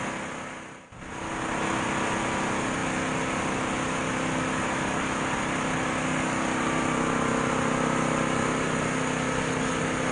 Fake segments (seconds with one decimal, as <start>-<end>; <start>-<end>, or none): none